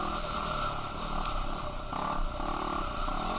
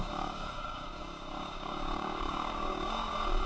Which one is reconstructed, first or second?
second